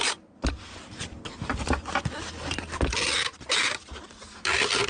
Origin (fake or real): real